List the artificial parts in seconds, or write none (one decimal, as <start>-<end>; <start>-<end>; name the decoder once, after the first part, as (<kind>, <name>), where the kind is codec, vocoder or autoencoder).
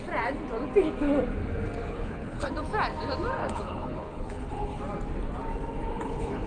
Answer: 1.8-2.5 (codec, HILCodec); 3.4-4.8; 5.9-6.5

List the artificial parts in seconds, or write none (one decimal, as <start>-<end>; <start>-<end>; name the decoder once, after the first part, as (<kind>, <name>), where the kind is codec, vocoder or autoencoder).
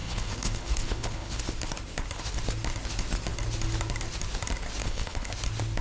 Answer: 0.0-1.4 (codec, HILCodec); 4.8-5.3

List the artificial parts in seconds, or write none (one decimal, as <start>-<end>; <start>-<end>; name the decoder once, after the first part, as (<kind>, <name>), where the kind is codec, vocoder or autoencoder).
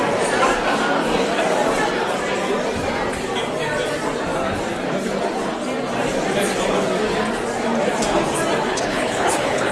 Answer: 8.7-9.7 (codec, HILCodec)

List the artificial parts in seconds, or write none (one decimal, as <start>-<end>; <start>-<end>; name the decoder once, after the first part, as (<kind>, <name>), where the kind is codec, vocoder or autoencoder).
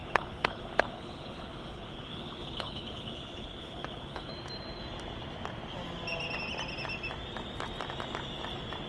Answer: 0.0-4.3 (codec, HILCodec)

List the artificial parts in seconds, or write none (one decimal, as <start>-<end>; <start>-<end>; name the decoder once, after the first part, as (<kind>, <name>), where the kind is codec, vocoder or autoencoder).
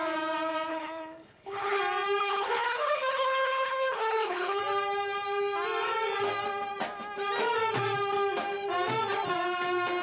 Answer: 0.7-1.8 (codec, HILCodec); 2.2-4.6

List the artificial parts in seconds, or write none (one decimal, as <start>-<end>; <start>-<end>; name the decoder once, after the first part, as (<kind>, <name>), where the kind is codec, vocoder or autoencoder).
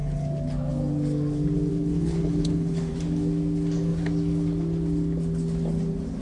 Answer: 1.7-2.9 (codec, HILCodec)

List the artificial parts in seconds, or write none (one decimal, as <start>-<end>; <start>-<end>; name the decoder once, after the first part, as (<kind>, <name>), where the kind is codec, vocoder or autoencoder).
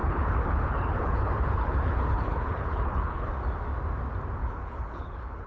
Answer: 0.0-3.3 (codec, HILCodec); 4.4-5.5